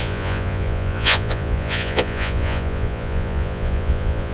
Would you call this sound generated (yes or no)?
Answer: yes